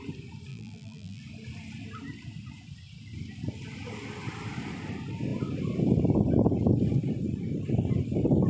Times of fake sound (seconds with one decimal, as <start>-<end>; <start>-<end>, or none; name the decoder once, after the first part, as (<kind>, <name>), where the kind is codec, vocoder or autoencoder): 0.5-1.2 (vocoder, BigVGAN v2)